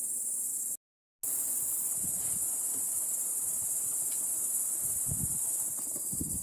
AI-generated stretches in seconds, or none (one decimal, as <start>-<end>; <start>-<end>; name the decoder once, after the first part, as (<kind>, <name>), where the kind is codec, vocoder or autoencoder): 2.7-4.3 (vocoder, BigVGAN v2)